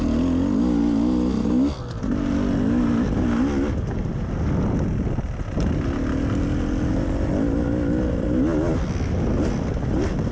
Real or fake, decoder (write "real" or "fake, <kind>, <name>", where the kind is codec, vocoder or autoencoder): real